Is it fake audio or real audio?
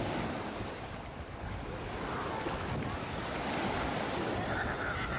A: real